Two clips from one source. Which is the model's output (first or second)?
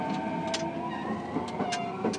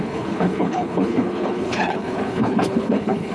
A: second